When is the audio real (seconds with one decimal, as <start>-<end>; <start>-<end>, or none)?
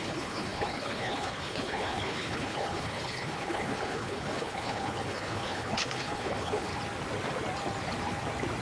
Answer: 6.7-8.6